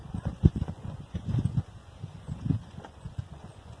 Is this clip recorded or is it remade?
remade